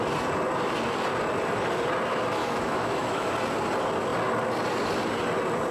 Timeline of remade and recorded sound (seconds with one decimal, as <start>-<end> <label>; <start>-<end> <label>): 0.0-2.4 recorded; 2.4-3.3 remade; 3.3-5.7 recorded